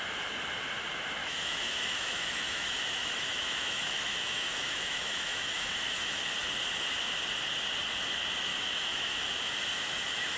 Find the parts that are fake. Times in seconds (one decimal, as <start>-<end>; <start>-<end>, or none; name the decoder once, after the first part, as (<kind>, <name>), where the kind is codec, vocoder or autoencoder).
1.2-6.2 (autoencoder, DAC-VAE); 8.5-9.2